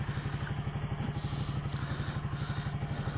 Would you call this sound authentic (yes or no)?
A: yes